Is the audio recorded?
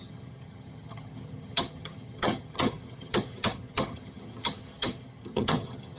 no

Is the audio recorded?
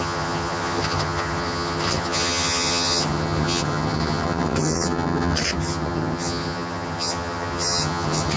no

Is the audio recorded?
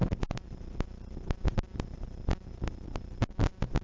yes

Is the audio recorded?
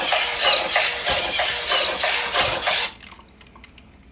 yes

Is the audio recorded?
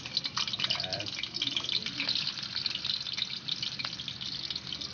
yes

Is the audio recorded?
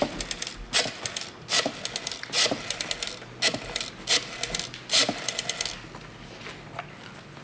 yes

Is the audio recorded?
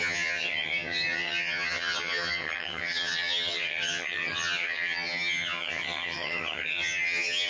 no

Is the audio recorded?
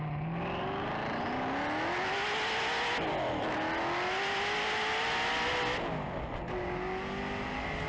yes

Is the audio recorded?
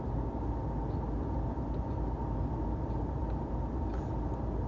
yes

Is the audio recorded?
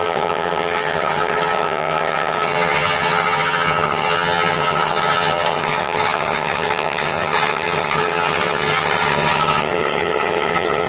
no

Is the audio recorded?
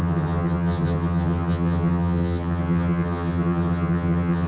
no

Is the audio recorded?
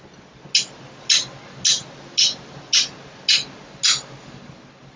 yes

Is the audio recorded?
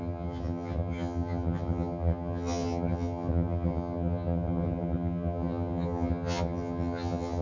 no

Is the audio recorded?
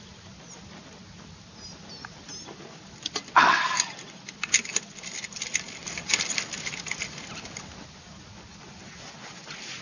yes